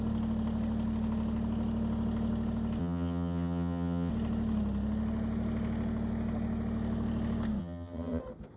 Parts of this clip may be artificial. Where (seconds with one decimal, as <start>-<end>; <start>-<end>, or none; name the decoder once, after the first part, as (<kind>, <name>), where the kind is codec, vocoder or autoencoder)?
2.8-4.1 (vocoder, HiFi-GAN); 7.6-8.2